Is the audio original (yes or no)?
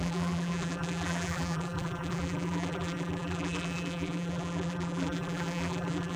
no